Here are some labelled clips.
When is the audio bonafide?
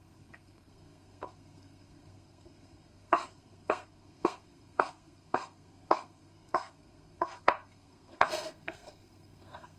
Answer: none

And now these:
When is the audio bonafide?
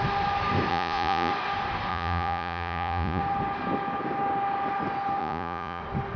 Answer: 0.0-0.7; 1.3-1.9; 3.2-5.2; 5.8-6.2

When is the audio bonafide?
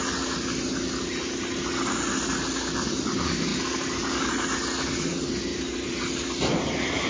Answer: 0.0-3.5; 4.3-5.5; 6.0-7.1